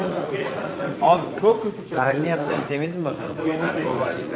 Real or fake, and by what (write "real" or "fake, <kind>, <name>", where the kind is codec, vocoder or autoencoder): fake, vocoder, Vocos